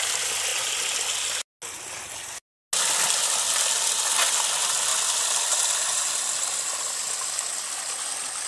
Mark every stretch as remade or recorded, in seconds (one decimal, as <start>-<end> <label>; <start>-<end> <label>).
0.0-8.5 recorded